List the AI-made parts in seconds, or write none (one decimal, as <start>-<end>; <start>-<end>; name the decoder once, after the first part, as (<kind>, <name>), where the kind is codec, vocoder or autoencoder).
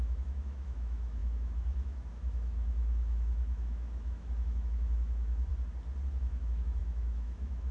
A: 0.0-5.5 (autoencoder, DAC-VAE); 6.2-7.7